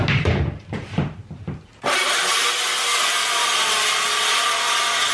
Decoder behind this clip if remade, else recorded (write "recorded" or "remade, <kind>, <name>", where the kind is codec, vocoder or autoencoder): recorded